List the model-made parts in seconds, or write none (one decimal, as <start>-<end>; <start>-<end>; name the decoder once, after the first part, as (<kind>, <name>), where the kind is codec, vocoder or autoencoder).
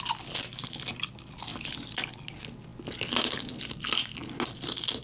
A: none